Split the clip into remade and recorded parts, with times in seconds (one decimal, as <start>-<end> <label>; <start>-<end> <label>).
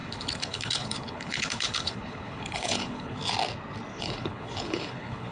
0.0-3.2 remade; 3.2-3.9 recorded; 3.9-5.3 remade